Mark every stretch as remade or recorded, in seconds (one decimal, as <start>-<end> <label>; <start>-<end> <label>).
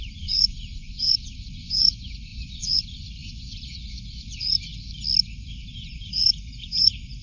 0.0-4.7 remade; 4.7-5.7 recorded; 5.7-7.2 remade